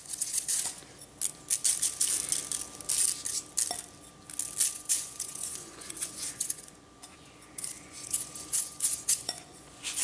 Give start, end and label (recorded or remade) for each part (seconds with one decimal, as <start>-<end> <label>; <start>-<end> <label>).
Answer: 0.0-0.8 remade; 0.8-4.7 recorded; 4.7-10.0 remade